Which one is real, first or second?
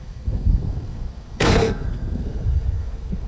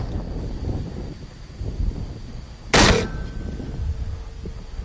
second